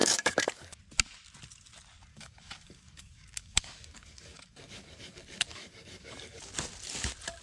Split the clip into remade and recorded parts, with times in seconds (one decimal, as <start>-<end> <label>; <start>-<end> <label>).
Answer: 0.0-0.8 remade; 0.8-2.1 recorded; 2.1-6.5 remade; 6.5-7.4 recorded